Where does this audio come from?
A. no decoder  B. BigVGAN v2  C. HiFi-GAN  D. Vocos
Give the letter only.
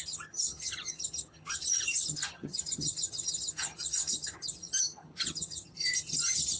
C